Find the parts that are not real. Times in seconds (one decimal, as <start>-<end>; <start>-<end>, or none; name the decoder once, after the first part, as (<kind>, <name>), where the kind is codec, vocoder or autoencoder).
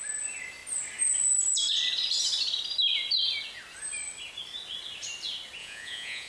5.6-6.3 (vocoder, Vocos)